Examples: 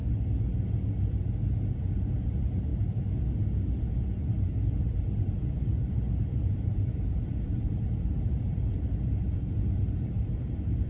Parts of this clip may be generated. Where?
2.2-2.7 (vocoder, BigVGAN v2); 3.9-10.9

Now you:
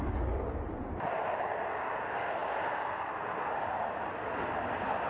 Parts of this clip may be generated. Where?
none

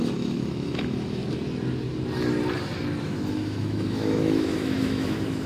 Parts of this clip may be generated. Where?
0.0-1.2 (autoencoder, DAC-VAE); 3.0-5.5

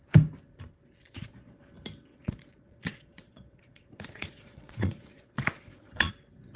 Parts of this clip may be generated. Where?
1.0-1.6 (vocoder, Vocos); 2.1-6.1

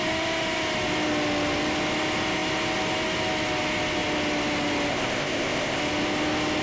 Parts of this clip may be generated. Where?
4.9-5.8 (codec, ZipCodec)

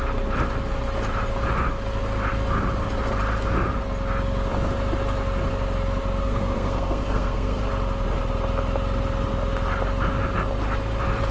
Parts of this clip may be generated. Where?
6.2-7.6 (codec, SNAC)

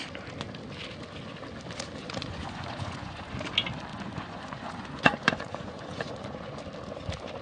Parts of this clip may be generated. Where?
2.0-3.4 (vocoder, Vocos); 3.9-6.6